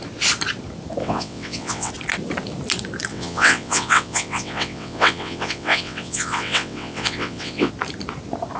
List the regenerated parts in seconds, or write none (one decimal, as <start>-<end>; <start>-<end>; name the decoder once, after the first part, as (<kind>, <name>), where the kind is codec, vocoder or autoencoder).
1.0-1.9 (vocoder, WaveNeXt); 3.1-7.7